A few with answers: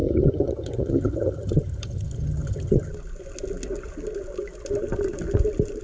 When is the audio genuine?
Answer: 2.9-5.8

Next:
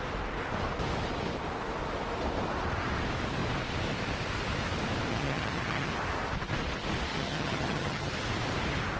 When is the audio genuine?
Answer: 0.0-5.1; 5.9-7.1; 8.1-9.0

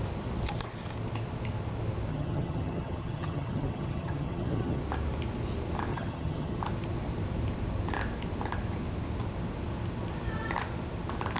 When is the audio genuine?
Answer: 0.0-2.1; 4.8-5.9; 6.6-11.4

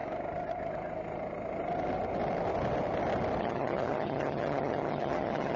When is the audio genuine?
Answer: 0.0-3.4

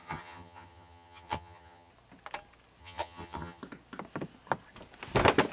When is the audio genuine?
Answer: 1.9-2.8; 3.6-5.5

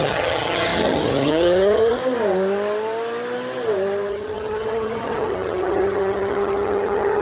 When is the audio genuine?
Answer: 2.0-4.1